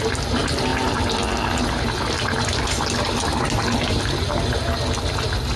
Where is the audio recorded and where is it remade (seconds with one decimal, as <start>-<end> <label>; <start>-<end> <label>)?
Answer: 0.0-5.6 recorded